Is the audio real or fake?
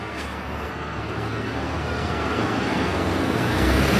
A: fake